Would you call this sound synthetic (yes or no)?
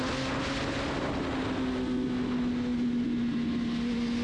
no